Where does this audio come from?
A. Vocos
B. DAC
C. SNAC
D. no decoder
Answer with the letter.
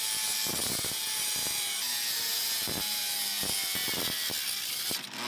D